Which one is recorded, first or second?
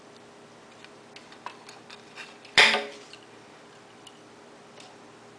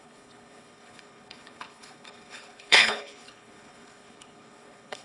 first